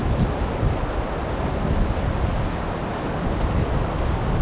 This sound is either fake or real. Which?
real